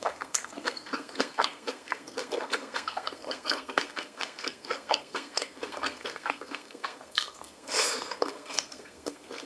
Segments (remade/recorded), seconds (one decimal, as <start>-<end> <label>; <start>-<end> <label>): 0.0-9.5 remade